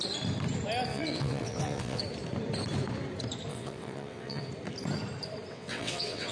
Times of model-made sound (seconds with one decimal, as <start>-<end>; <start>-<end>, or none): 0.9-2.0; 3.5-4.5; 5.5-6.3